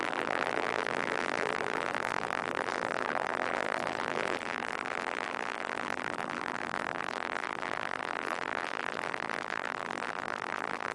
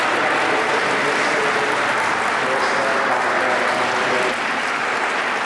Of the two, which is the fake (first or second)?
first